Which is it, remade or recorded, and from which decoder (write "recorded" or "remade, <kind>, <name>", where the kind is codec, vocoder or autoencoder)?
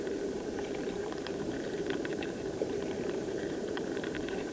remade, vocoder, BigVGAN v2